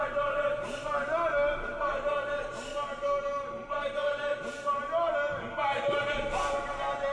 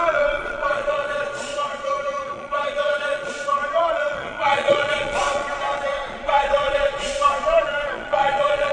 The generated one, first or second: second